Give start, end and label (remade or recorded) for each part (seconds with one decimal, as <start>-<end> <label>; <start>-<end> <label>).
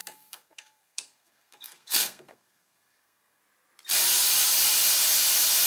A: 0.0-3.4 remade; 3.4-5.7 recorded